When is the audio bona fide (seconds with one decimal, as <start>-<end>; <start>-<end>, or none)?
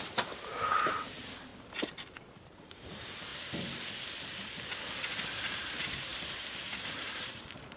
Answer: 1.5-2.6; 3.3-5.3